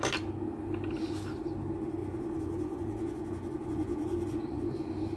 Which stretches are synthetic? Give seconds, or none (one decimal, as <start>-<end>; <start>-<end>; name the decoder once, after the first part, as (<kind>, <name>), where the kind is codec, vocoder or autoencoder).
2.0-4.7 (vocoder, Vocos)